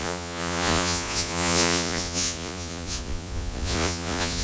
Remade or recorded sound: remade